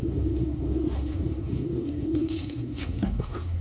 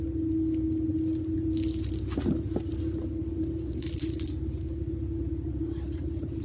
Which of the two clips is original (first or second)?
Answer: second